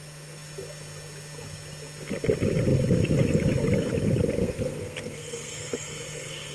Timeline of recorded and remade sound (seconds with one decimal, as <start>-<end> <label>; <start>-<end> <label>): 0.0-4.4 recorded; 4.4-6.5 remade